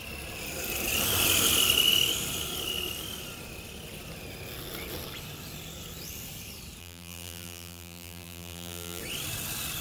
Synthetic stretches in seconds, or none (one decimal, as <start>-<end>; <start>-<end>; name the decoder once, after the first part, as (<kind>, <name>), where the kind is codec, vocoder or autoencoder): 6.8-9.0 (vocoder, BigVGAN v2)